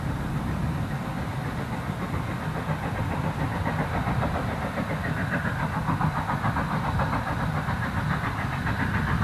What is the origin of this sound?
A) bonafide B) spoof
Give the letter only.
A